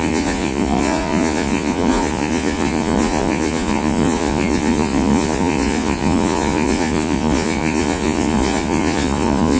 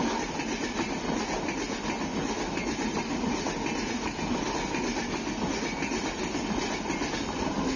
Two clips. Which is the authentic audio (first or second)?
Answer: second